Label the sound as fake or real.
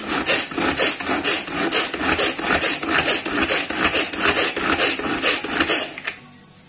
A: real